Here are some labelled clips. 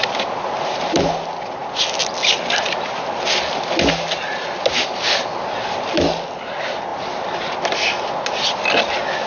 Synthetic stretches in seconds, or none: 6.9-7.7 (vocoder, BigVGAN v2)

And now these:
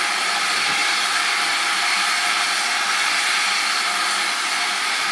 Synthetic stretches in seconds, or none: none

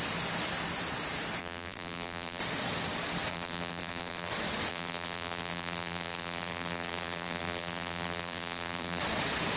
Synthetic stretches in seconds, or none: 1.4-2.4 (vocoder, BigVGAN v2); 3.3-4.3; 4.7-9.0

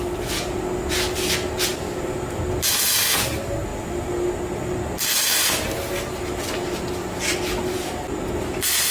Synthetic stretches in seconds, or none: 1.7-2.4 (vocoder, BigVGAN v2); 3.7-4.3; 7.0-7.6

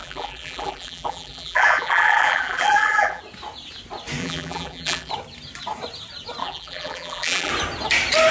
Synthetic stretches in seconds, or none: 0.0-3.2 (vocoder, BigVGAN v2); 4.2-5.1; 6.4-7.5